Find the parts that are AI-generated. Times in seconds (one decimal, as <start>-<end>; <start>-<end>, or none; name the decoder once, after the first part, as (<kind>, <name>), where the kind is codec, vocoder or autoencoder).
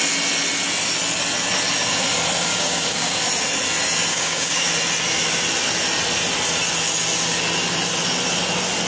2.5-3.2 (codec, DAC); 4.1-4.7